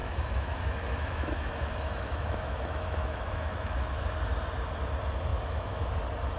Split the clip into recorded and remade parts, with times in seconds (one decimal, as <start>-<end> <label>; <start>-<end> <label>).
0.0-3.8 remade; 3.8-5.3 recorded; 5.3-5.9 remade; 5.9-6.4 recorded